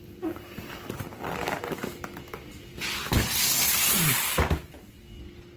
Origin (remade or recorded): recorded